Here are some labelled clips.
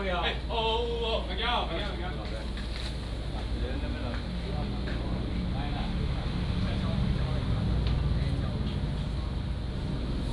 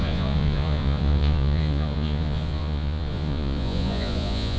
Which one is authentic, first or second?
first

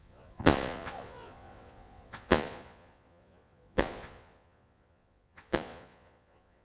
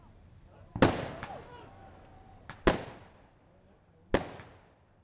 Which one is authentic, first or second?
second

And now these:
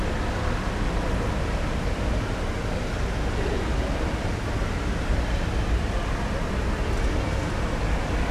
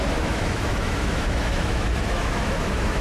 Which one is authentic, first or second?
first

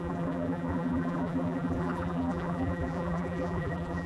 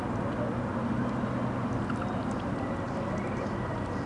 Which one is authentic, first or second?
second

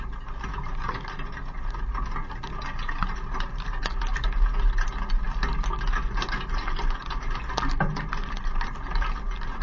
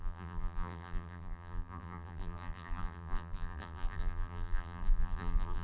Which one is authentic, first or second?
first